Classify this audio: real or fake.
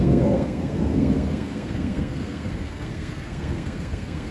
fake